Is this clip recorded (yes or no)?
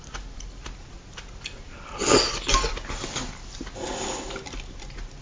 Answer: yes